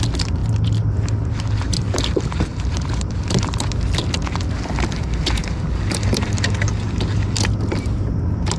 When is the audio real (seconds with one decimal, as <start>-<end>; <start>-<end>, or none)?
0.0-8.6